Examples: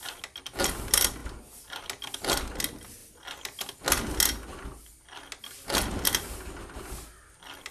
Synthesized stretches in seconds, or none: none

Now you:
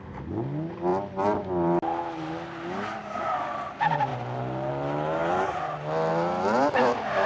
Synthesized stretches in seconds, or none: none

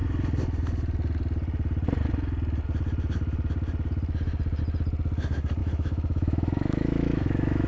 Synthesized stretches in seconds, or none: 5.6-7.7 (autoencoder, DAC-VAE)

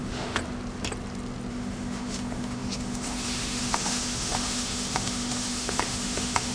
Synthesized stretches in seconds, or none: 0.0-0.4 (autoencoder, DAC-VAE); 1.5-6.5